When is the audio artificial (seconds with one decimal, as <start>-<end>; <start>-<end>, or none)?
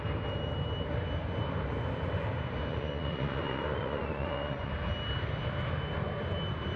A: 2.7-4.7